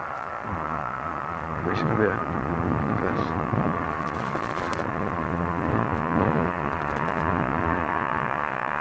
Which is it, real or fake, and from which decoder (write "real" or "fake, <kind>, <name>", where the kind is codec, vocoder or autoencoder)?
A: fake, vocoder, Vocos